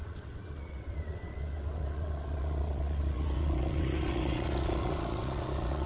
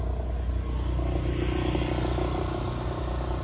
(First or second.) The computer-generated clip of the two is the first